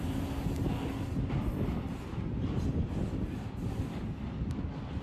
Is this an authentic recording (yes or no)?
yes